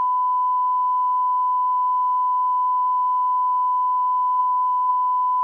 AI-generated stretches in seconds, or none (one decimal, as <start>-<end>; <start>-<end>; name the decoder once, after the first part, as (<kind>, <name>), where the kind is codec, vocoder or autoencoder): 4.4-4.9 (autoencoder, DAC-VAE)